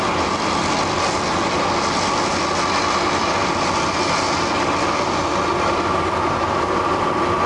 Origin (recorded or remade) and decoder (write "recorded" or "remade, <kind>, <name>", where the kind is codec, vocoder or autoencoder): recorded